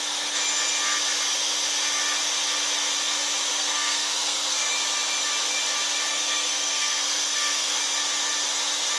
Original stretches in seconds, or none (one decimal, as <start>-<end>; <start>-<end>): 0.0-3.5; 4.7-6.1; 7.8-9.0